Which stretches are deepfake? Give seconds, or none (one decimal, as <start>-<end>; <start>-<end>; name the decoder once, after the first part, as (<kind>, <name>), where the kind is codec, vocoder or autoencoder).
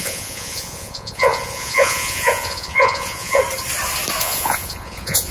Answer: 0.0-3.4 (vocoder, Vocos); 4.2-5.3